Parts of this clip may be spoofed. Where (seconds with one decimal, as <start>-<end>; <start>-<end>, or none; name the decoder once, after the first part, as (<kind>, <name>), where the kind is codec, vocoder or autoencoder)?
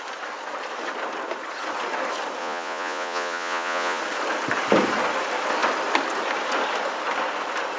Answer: 2.4-4.0 (vocoder, Vocos)